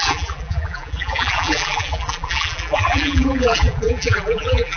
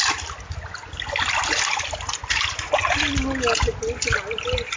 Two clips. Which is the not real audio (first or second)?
first